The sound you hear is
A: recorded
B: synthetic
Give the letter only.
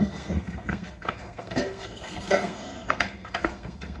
B